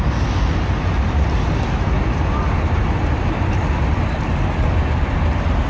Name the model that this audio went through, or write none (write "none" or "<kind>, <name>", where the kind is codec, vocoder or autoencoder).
none